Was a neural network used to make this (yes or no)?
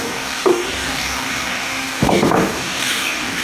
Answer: yes